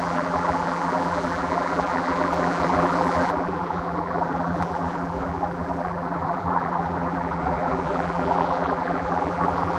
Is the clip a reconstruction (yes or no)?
yes